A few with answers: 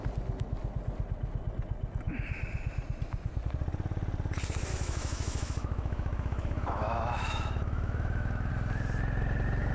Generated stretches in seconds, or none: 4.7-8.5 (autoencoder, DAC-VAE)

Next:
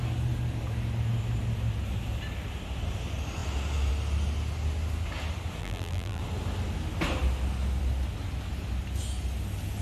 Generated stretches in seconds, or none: 5.6-6.2 (vocoder, BigVGAN v2)

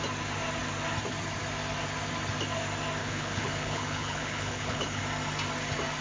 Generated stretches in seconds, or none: 3.0-5.0 (codec, HILCodec)

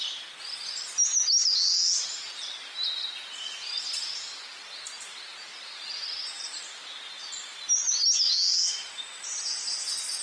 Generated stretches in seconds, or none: none

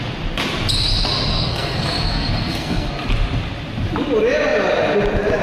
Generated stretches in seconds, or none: 1.3-2.9 (codec, SNAC)

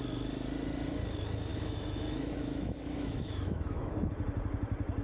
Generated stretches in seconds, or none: 1.5-4.1 (autoencoder, DAC-VAE)

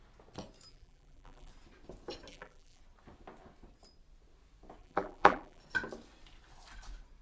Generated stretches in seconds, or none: 0.7-1.5 (vocoder, BigVGAN v2); 2.3-2.8; 4.8-5.6